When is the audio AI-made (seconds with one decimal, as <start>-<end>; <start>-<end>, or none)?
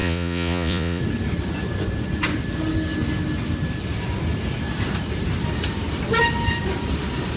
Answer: 0.0-1.0